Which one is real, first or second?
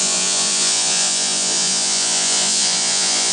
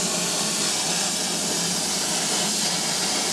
second